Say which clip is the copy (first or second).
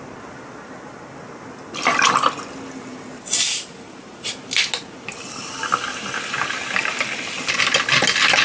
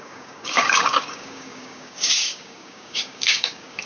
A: second